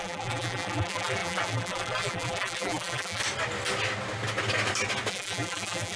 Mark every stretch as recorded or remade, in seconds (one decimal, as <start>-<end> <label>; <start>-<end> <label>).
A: 0.0-3.2 remade; 3.2-5.1 recorded; 5.1-6.0 remade